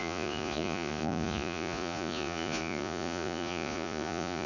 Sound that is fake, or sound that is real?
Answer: fake